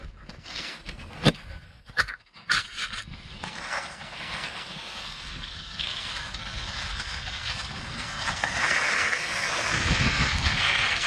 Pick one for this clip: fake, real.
fake